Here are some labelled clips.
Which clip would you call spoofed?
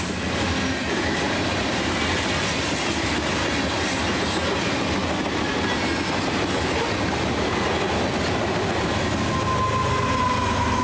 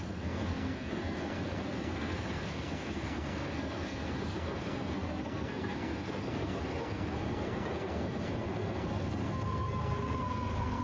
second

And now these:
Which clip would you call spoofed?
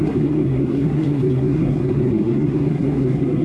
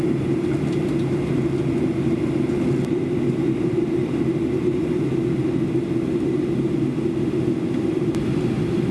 first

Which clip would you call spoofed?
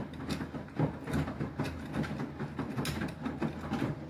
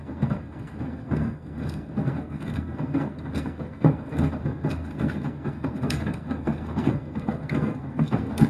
second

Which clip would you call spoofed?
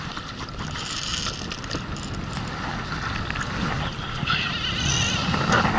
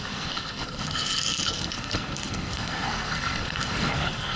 second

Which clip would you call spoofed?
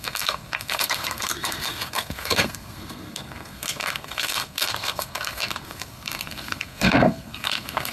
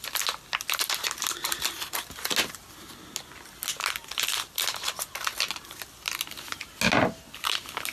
first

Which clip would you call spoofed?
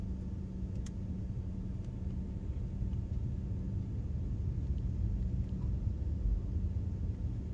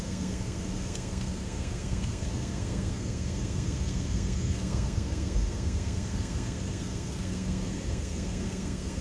second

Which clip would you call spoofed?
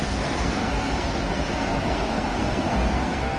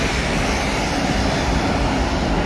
first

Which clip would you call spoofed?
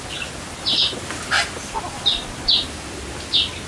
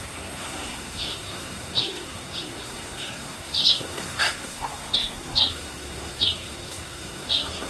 second